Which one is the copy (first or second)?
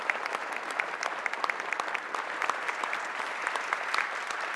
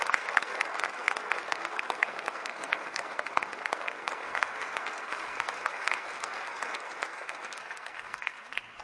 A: second